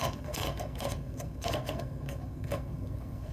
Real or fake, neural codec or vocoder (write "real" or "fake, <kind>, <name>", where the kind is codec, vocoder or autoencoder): fake, codec, SNAC